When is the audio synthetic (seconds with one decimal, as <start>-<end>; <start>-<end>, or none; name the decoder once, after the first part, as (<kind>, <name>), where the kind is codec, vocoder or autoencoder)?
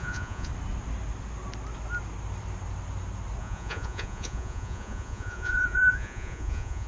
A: 0.0-0.5 (vocoder, Vocos); 3.4-6.9